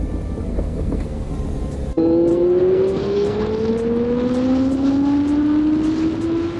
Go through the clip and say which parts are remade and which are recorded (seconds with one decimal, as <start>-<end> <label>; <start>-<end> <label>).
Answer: 0.0-0.5 recorded; 0.5-1.3 remade; 1.3-2.3 recorded; 2.3-3.4 remade; 3.4-6.6 recorded